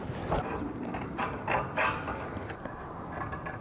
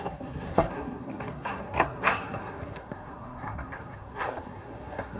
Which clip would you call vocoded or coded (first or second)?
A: second